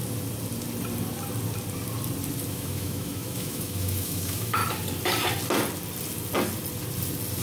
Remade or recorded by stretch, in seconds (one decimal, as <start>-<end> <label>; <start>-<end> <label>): 0.0-2.5 recorded; 2.5-4.6 remade; 4.6-7.4 recorded